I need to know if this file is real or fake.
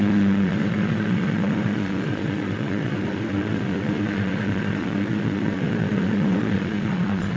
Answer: fake